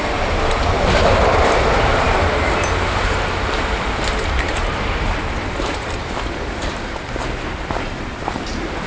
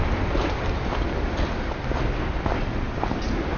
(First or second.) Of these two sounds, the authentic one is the second